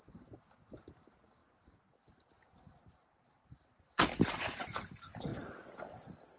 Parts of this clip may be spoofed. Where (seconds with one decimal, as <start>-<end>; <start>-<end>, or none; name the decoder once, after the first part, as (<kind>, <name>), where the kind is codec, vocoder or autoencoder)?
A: none